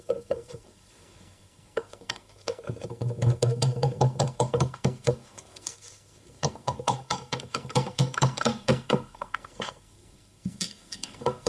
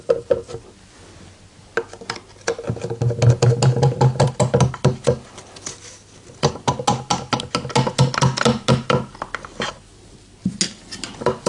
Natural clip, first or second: second